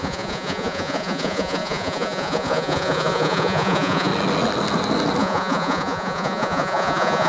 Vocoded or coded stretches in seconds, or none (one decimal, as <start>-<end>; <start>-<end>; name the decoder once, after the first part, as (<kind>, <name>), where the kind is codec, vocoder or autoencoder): 0.0-4.1 (vocoder, Vocos); 5.2-7.3